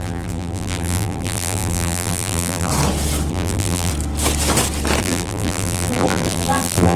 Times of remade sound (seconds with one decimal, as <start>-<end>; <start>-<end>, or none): 0.0-2.7; 3.3-3.9; 5.0-7.0